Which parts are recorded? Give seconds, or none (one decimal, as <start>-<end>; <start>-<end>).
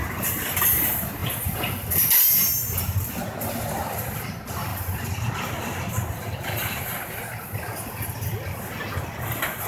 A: 0.0-9.7